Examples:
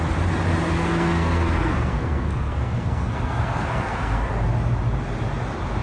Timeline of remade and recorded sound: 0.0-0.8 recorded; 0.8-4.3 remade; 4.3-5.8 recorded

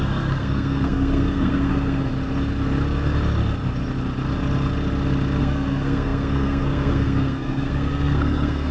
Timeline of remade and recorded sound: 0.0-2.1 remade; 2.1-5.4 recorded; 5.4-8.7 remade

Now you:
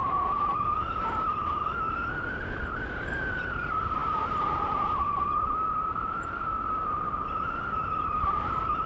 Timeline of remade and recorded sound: 0.0-8.9 recorded